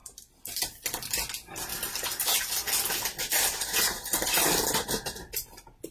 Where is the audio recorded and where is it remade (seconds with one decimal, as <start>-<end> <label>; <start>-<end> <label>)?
0.0-5.9 recorded